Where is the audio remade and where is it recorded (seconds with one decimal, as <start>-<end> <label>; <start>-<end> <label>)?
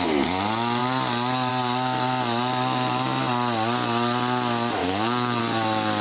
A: 0.0-4.8 recorded; 4.8-5.4 remade; 5.4-6.0 recorded